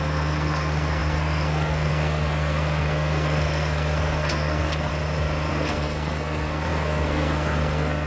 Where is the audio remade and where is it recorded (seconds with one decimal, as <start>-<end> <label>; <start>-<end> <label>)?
0.0-4.9 remade; 4.9-5.5 recorded; 5.5-8.1 remade